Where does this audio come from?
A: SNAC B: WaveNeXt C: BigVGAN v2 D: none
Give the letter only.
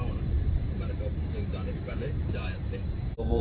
C